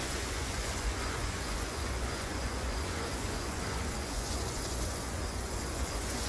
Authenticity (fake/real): fake